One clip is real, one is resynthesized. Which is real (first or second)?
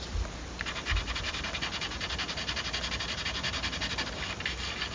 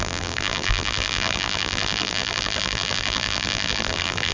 first